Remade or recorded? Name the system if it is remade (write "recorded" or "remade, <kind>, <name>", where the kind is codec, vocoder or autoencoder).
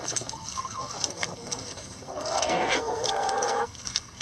remade, codec, SNAC